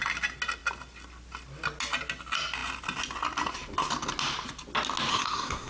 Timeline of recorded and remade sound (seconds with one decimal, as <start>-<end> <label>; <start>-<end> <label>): 0.0-5.1 recorded; 5.1-5.7 remade